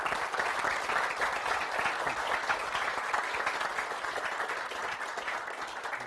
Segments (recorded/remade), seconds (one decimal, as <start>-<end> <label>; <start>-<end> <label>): 0.0-6.1 recorded